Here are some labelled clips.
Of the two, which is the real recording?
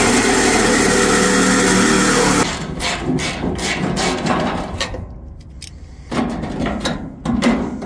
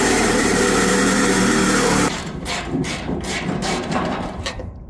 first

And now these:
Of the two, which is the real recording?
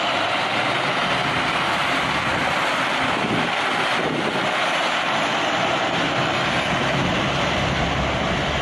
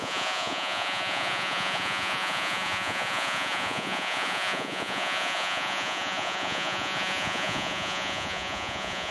first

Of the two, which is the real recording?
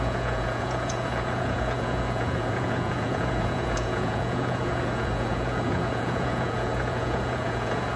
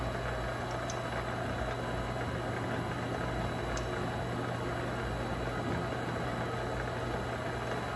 second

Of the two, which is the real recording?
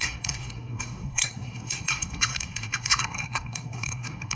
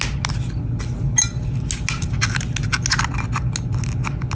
second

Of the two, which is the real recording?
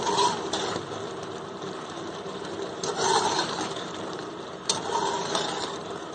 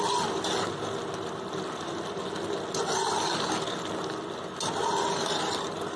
second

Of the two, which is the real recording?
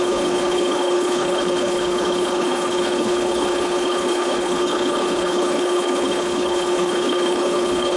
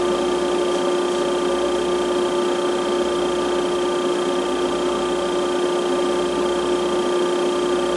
second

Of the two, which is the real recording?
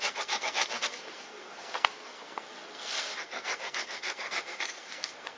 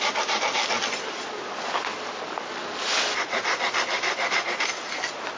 second